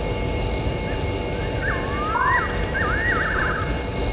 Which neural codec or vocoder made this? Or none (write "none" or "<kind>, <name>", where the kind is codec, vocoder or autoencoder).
none